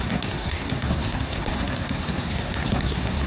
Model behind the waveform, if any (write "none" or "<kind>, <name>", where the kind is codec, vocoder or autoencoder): codec, SNAC